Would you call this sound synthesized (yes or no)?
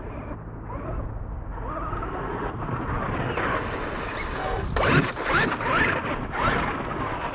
no